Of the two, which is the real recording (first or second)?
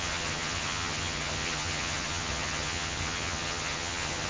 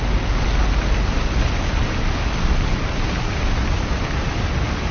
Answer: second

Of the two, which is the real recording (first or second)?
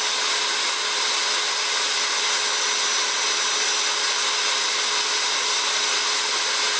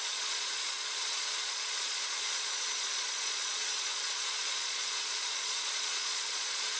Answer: first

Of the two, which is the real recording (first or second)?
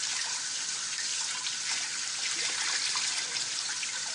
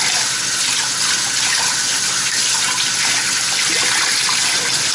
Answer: second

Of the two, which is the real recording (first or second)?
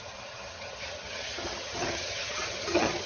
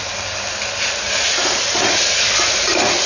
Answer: second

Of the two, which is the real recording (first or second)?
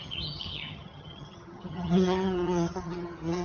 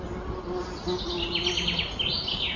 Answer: second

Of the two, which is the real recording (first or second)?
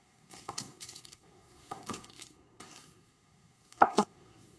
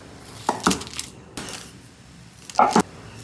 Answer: second